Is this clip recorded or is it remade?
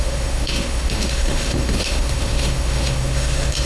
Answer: remade